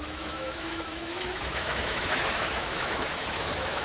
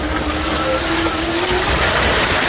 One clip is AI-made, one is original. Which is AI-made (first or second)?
first